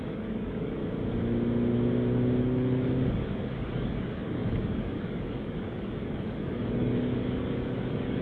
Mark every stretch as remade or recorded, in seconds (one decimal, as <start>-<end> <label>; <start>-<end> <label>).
0.0-0.8 remade; 0.8-2.4 recorded; 2.4-8.2 remade